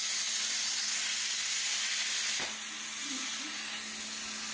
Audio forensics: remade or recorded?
recorded